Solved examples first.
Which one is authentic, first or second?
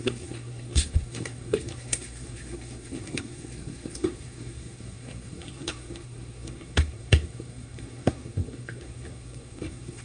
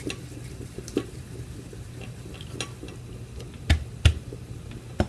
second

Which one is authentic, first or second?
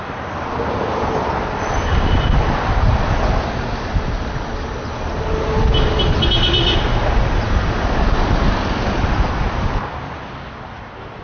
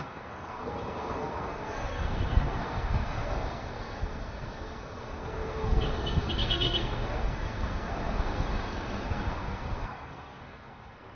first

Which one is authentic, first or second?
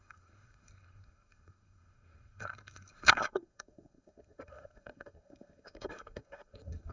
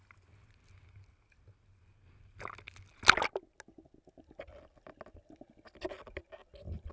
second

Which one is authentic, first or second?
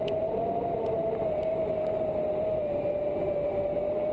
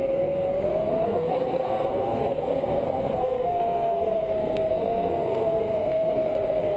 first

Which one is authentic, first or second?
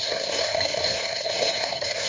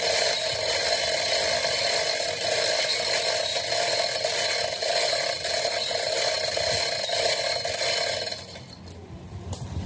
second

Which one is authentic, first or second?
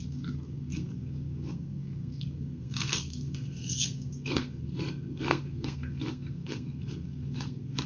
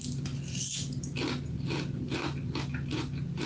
second